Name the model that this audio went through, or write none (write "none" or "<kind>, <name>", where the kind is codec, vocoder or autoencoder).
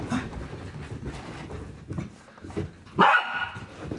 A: none